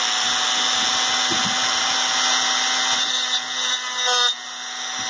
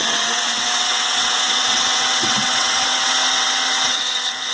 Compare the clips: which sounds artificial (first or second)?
second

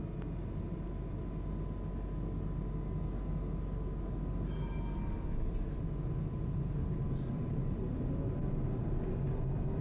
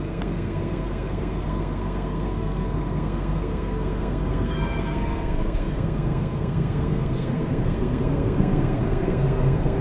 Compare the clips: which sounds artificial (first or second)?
second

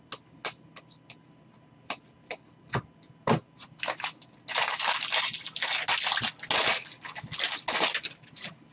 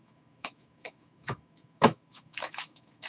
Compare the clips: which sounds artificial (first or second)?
second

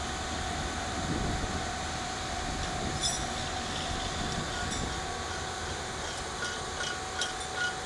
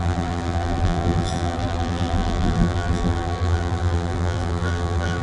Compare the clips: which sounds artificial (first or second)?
second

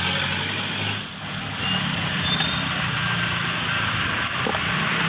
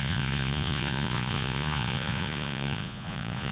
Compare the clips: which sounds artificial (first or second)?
second